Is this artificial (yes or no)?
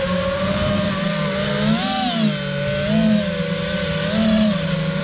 no